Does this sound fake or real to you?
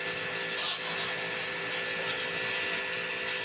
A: real